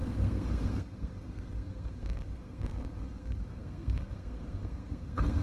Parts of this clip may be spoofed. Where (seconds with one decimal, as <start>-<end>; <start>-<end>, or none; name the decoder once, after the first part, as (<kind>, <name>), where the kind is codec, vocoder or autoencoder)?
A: 0.0-5.4 (codec, SNAC)